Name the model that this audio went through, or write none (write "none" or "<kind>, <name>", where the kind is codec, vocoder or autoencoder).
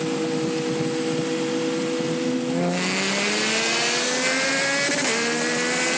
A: none